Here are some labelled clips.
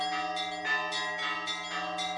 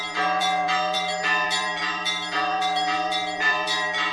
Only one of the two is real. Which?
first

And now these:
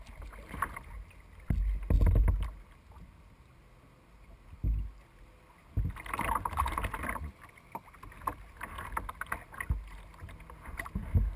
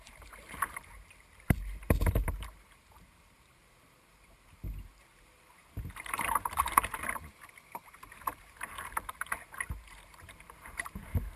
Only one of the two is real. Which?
first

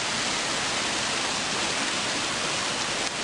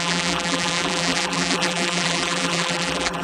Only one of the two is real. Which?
first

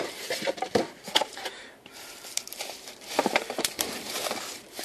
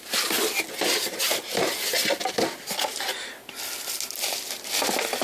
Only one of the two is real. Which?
second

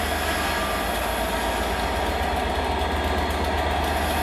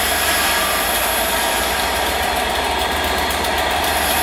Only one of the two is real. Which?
first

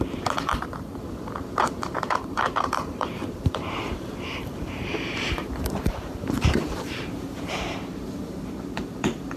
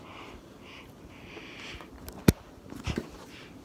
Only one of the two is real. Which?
second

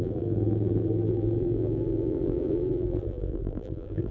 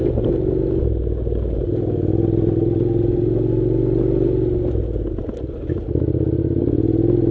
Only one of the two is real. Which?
second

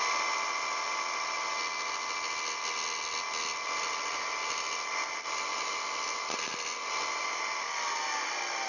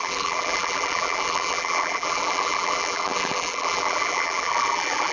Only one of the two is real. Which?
first